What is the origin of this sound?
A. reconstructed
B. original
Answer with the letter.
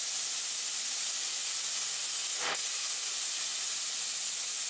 B